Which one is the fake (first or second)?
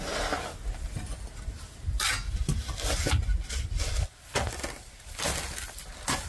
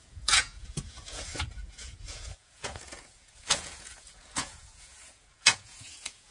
second